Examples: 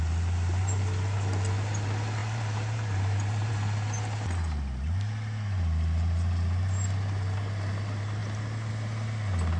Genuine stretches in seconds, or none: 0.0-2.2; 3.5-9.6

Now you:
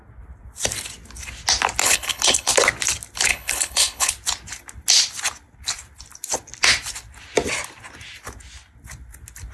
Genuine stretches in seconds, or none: 0.0-1.8; 2.5-3.3; 4.1-9.5

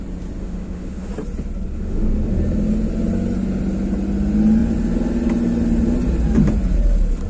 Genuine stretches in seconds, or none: 0.0-0.4; 1.1-1.7; 2.4-7.3

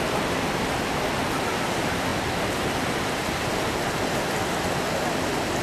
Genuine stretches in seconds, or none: 0.0-5.6

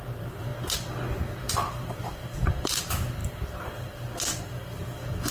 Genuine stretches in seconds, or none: 0.5-1.5

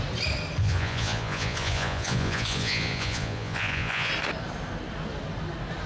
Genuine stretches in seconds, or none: 0.0-0.6; 4.1-5.9

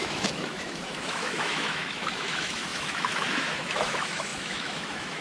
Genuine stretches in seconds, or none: none